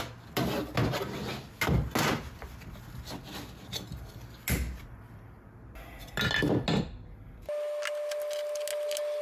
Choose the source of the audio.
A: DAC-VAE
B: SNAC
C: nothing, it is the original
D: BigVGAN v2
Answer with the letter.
C